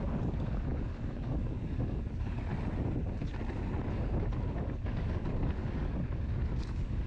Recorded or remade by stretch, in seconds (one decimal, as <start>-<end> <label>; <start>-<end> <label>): 0.0-2.5 remade; 2.5-4.5 recorded; 4.5-7.1 remade